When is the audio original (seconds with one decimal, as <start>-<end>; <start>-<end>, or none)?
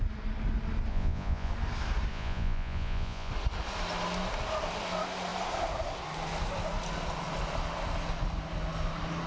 0.0-0.9; 1.5-2.1; 3.3-9.3